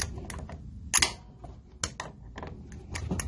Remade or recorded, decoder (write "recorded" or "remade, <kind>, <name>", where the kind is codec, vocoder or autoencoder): recorded